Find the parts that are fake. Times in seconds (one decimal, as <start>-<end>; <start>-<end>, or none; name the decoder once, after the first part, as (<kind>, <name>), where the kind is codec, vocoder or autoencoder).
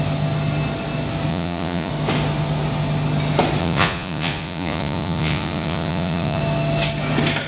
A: 1.3-1.9 (vocoder, Vocos); 3.6-6.4